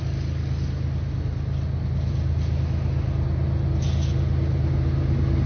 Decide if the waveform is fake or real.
real